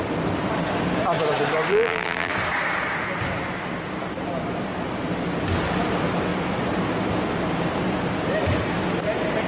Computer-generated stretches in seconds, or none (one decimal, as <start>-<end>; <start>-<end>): 1.7-2.3